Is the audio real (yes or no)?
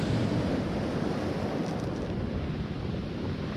yes